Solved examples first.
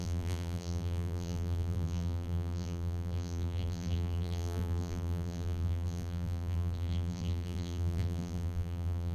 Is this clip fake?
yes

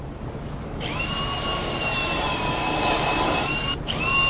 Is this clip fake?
yes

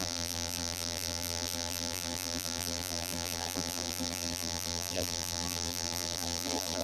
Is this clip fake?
yes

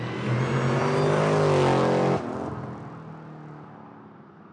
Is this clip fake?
no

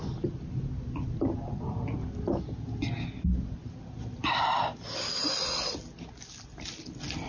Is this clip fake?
no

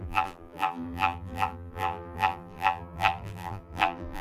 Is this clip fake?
yes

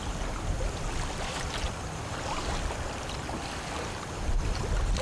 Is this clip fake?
no